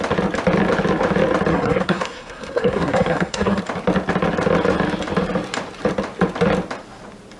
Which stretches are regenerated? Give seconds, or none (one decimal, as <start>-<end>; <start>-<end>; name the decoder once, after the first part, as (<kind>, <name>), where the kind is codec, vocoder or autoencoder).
1.5-3.6 (codec, SNAC)